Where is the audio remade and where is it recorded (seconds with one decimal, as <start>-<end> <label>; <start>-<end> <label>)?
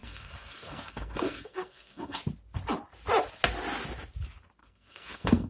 0.0-2.2 remade; 2.2-4.6 recorded; 4.6-5.5 remade